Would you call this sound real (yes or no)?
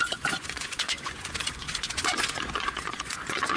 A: no